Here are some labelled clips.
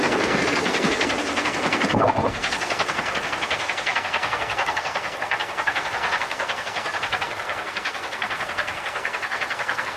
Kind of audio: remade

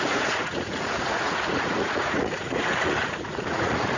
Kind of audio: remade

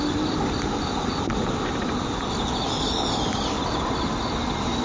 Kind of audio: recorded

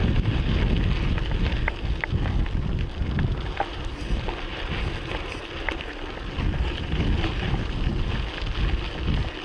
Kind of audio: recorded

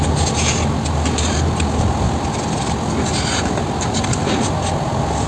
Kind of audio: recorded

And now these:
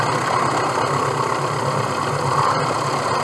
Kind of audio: recorded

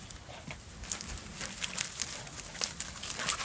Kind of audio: recorded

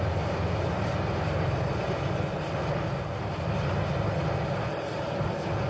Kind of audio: recorded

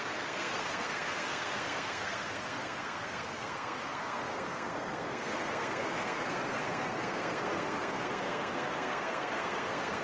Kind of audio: remade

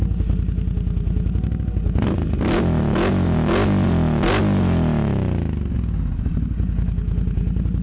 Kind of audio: recorded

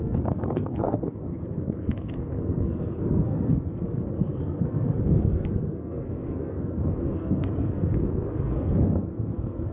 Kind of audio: remade